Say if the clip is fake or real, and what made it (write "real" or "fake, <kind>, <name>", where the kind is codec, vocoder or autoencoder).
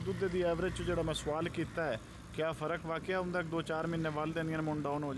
real